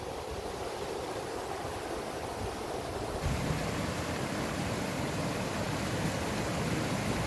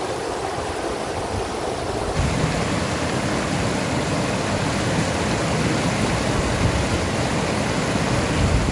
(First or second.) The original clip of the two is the second